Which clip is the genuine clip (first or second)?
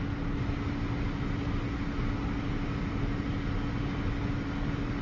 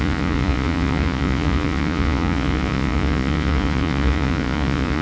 first